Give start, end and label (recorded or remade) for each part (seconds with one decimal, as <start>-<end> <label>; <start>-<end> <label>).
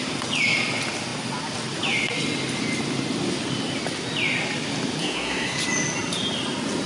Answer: 0.0-5.0 recorded; 5.0-5.6 remade; 5.6-6.9 recorded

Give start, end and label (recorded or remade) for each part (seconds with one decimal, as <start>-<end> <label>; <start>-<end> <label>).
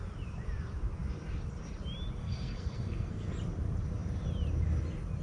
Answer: 0.0-2.2 recorded; 2.2-3.3 remade; 3.3-5.2 recorded